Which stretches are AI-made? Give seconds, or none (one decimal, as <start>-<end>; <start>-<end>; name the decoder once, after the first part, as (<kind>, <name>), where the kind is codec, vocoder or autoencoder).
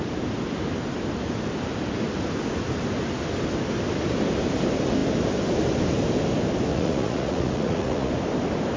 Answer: 6.7-8.1 (vocoder, Vocos)